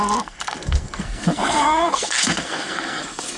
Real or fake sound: fake